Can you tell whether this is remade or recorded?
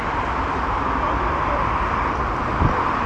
recorded